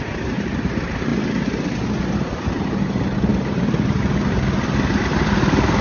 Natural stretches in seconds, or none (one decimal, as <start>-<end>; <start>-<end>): 0.0-5.8